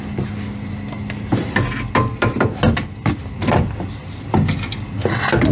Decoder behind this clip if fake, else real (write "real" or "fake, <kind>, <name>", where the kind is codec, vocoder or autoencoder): real